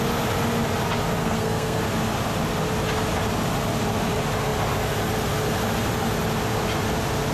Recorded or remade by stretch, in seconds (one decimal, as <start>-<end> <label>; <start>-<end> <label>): 0.0-1.2 recorded; 1.2-1.8 remade; 1.8-7.3 recorded